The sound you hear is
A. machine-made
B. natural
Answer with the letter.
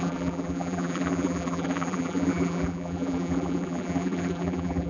A